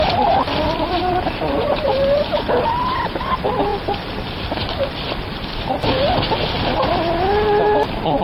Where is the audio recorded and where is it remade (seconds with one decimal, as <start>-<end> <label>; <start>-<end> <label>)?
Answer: 0.0-3.7 remade; 3.7-4.4 recorded; 4.4-5.9 remade; 5.9-7.6 recorded; 7.6-8.2 remade

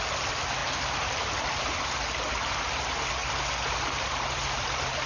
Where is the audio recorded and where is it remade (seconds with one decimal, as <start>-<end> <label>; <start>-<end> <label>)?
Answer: 0.0-5.1 recorded